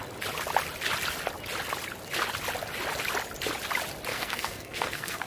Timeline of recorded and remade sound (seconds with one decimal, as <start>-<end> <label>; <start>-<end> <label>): 0.0-4.1 recorded; 4.1-5.3 remade